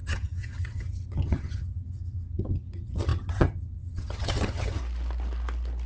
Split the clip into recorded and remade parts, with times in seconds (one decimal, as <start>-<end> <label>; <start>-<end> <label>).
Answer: 0.0-4.8 remade; 4.8-5.9 recorded